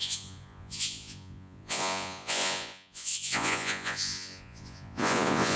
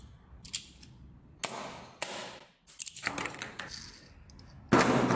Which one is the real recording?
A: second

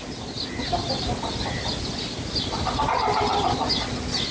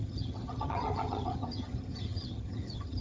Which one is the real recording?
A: first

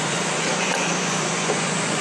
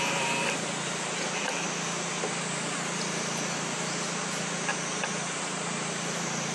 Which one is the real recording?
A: second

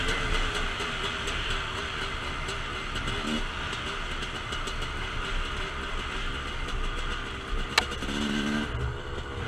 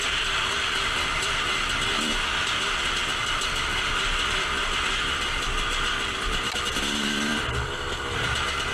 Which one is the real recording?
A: first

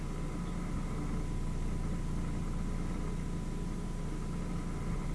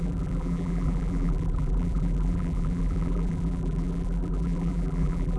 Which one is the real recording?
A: first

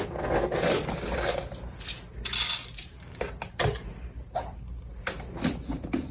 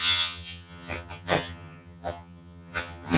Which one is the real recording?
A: first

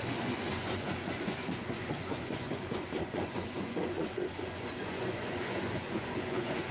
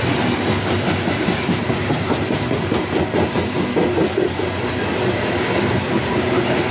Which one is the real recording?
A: second